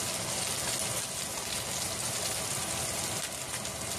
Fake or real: real